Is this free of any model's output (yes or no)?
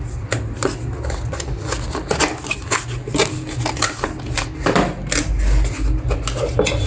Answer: yes